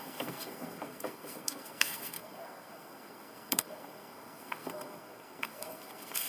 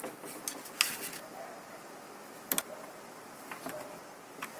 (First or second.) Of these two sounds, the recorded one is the second